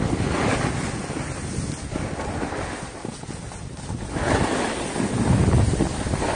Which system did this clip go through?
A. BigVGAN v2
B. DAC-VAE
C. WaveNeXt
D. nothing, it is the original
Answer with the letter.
D